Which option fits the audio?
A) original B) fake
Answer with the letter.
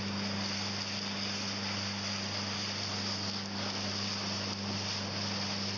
A